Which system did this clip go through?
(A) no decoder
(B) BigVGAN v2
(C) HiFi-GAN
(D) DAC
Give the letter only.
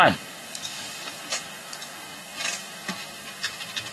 D